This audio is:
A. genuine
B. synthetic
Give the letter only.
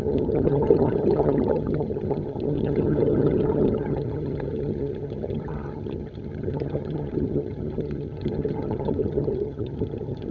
B